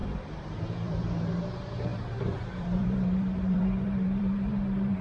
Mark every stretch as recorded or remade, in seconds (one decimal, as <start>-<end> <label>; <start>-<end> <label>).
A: 0.0-5.0 remade